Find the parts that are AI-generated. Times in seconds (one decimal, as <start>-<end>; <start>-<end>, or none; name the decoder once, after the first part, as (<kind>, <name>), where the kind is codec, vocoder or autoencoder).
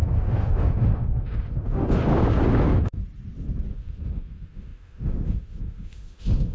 0.0-2.1 (autoencoder, DAC-VAE); 2.6-3.0; 3.7-6.5